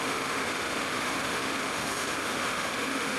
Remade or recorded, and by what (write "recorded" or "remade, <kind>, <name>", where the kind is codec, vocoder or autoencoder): remade, autoencoder, DAC-VAE